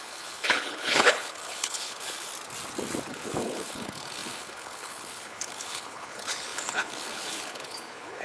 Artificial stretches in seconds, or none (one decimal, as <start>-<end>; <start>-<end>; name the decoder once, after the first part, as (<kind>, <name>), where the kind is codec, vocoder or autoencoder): 0.0-2.3 (codec, HILCodec); 3.1-8.2